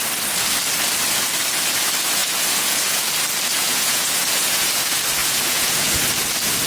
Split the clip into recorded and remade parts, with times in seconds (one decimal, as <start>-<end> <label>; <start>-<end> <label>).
0.0-2.2 recorded; 2.2-3.0 remade; 3.0-3.5 recorded; 3.5-4.7 remade; 4.7-5.2 recorded; 5.2-6.1 remade; 6.1-6.7 recorded